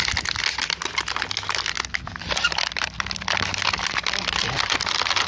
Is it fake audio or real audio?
real